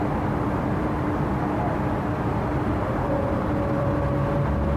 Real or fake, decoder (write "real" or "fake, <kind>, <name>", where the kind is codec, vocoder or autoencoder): fake, vocoder, BigVGAN v2